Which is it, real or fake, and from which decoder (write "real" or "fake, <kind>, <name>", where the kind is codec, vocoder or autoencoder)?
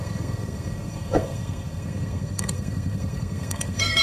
fake, codec, SNAC